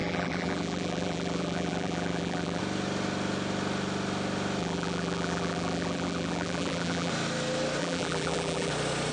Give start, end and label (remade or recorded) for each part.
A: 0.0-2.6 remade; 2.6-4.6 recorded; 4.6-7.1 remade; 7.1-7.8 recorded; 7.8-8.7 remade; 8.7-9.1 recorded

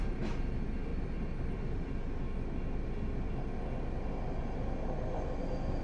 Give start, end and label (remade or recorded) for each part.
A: 0.0-0.9 recorded; 0.9-1.9 remade; 1.9-5.8 recorded

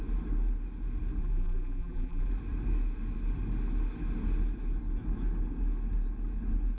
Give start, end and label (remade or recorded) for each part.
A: 0.0-1.2 recorded; 1.2-2.3 remade; 2.3-6.8 recorded

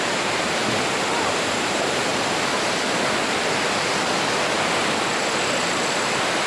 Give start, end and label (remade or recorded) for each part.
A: 0.0-0.6 remade; 0.6-1.3 recorded; 1.3-2.1 remade; 2.1-5.4 recorded; 5.4-6.5 remade

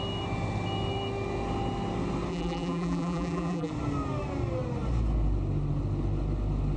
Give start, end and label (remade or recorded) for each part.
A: 0.0-2.3 recorded; 2.3-3.7 remade; 3.7-6.8 recorded